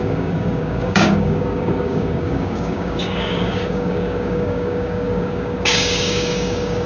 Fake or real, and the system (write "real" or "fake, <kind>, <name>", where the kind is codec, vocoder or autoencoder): fake, codec, DAC